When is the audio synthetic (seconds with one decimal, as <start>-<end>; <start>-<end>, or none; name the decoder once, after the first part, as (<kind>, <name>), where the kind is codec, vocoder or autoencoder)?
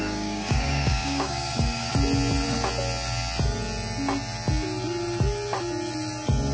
0.0-1.9 (codec, DAC)